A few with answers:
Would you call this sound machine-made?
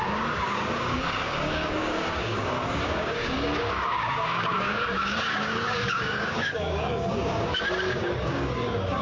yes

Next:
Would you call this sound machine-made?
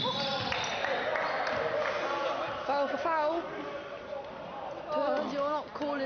no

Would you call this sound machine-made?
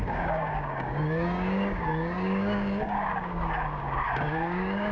yes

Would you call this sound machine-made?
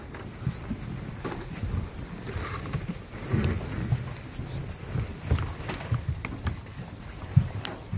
no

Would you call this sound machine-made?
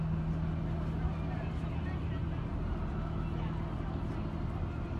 no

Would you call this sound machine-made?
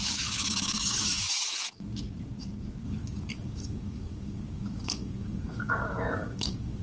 yes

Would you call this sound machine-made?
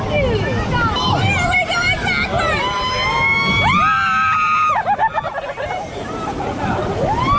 no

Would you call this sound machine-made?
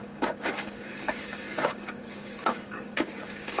yes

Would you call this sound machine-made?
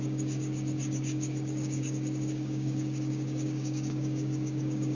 yes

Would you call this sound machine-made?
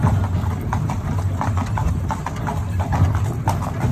no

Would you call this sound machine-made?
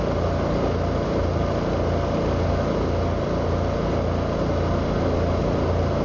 no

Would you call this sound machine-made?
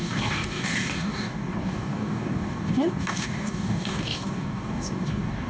yes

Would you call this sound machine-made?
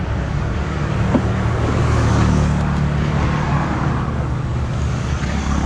yes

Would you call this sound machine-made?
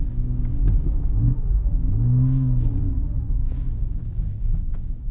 yes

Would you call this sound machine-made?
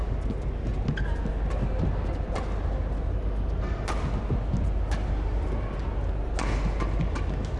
no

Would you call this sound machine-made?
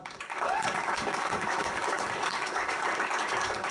yes